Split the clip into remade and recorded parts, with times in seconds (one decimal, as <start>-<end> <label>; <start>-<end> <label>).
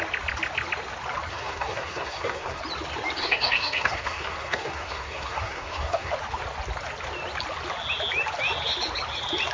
0.0-1.3 recorded; 1.3-2.6 remade; 2.6-3.2 recorded; 3.2-6.1 remade; 6.1-9.5 recorded